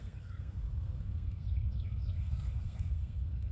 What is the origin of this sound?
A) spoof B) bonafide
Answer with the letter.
A